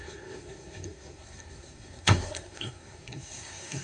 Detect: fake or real fake